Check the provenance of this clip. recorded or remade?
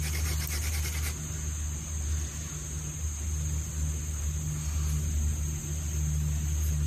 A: recorded